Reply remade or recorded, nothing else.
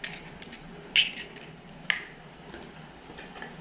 recorded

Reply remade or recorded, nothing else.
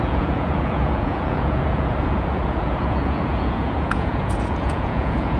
remade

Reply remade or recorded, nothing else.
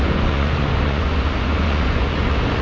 remade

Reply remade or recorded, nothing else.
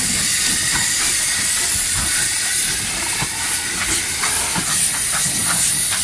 recorded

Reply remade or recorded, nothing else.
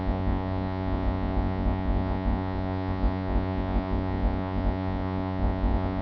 remade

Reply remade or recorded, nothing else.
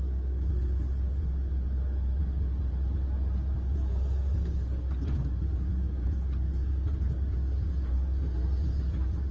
recorded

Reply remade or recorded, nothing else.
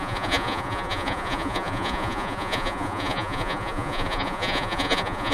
remade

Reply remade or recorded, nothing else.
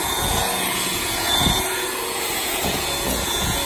remade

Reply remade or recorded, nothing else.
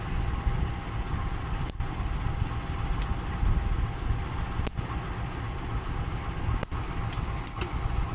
recorded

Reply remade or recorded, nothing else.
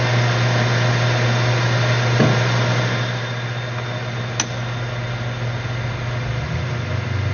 recorded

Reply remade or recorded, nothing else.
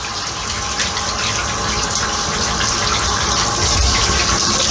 recorded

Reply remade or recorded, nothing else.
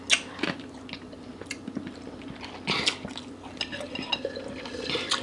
recorded